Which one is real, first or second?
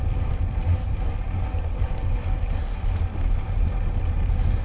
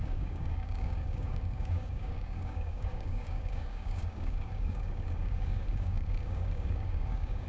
first